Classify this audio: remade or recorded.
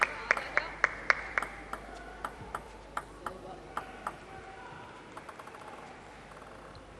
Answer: remade